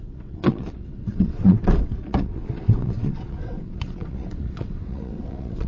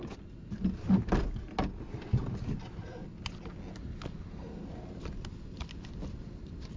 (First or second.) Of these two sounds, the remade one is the first